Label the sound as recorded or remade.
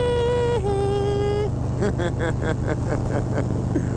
recorded